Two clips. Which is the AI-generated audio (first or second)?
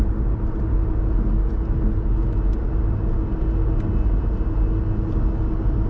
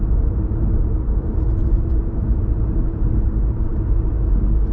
second